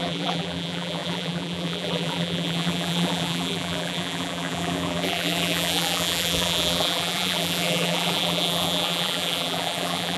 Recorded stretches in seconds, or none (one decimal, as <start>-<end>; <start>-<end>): none